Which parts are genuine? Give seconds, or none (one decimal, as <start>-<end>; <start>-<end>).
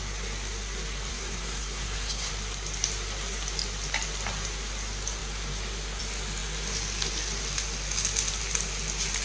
0.0-1.1; 2.3-9.2